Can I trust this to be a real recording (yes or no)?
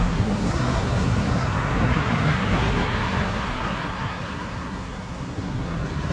no